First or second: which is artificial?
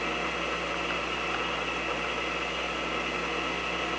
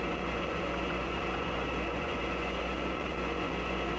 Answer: second